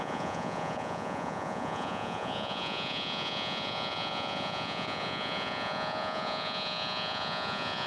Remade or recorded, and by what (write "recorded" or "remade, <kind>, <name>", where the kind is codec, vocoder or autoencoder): remade, vocoder, Vocos